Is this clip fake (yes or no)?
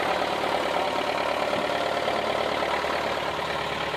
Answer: no